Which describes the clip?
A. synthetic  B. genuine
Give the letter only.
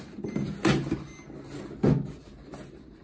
B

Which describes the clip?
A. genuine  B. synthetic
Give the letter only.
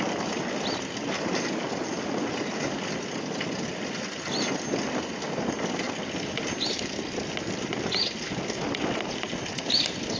A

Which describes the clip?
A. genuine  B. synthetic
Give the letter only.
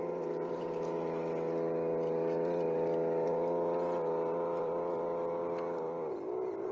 A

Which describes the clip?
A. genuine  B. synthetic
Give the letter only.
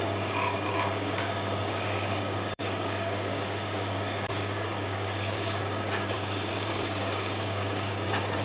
B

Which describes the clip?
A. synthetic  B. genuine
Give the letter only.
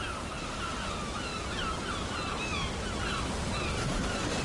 B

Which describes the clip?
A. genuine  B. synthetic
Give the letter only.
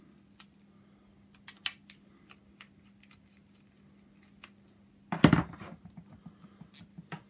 A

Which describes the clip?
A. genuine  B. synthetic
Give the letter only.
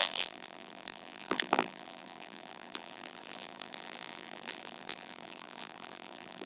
B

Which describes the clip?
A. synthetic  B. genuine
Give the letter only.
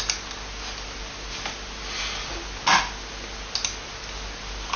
B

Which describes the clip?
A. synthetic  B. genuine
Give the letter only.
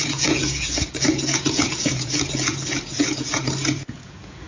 A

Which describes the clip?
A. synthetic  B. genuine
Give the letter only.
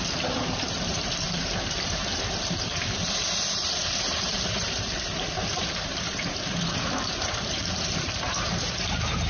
A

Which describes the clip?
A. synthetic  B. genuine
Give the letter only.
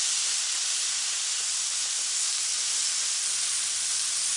B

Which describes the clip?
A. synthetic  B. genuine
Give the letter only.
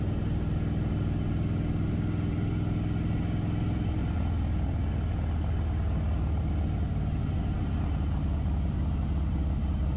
B